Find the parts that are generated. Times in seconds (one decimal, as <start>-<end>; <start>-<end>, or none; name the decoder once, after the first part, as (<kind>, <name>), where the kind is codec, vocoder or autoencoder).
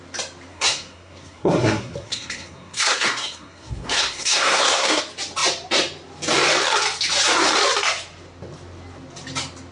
0.5-5.0 (codec, SNAC)